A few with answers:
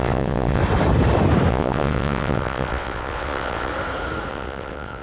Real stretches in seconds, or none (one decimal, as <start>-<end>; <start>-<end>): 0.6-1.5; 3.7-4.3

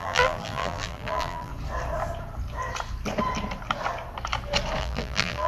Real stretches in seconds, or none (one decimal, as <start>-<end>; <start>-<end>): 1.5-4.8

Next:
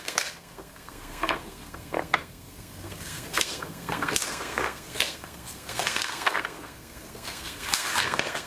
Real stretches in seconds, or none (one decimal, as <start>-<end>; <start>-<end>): none

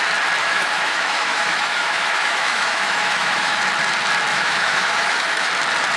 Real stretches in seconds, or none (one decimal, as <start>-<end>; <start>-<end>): 0.0-0.4; 3.6-4.3; 5.5-6.0